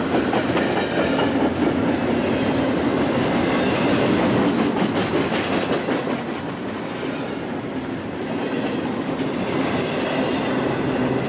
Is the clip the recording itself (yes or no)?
yes